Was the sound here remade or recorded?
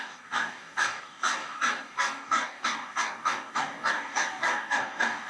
remade